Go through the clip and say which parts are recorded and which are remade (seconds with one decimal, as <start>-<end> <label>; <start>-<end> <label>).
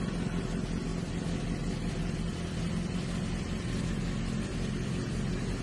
0.0-5.6 recorded